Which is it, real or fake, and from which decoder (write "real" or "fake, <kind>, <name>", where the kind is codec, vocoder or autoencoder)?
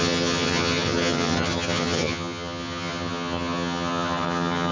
fake, vocoder, HiFi-GAN